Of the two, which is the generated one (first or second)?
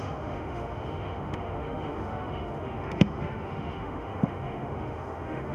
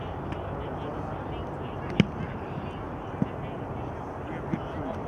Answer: first